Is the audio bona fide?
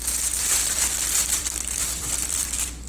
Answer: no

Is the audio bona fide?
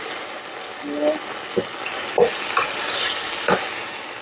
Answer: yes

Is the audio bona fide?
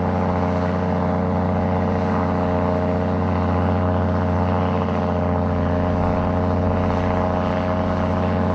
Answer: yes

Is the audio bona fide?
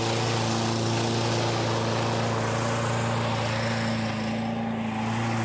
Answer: yes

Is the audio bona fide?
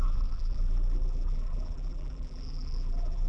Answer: no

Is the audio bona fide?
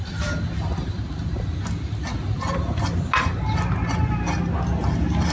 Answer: yes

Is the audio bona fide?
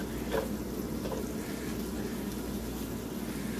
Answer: yes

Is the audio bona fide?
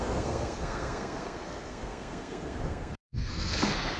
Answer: no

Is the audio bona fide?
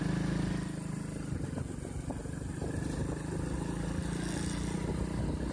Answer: yes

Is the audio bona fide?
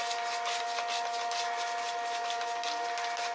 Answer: yes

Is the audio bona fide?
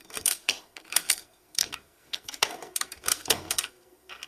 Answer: no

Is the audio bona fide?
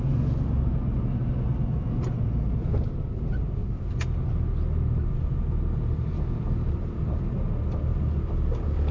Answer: yes